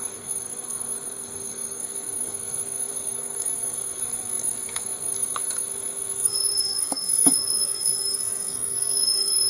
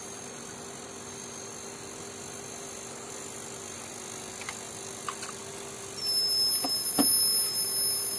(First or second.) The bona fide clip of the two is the second